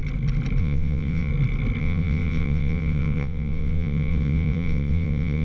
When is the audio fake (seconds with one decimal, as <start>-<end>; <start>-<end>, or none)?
0.6-1.3; 1.8-5.4